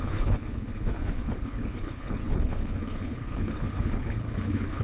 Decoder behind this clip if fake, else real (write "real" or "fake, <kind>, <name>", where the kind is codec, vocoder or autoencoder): fake, codec, HILCodec